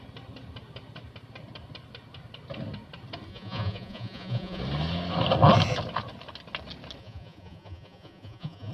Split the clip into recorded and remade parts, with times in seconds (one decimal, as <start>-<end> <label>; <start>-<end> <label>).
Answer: 0.0-3.3 recorded; 3.3-4.6 remade; 4.6-7.0 recorded; 7.0-8.7 remade